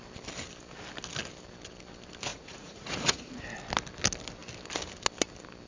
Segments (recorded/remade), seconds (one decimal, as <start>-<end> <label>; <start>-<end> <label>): 0.0-2.3 recorded; 2.3-3.3 remade; 3.3-5.7 recorded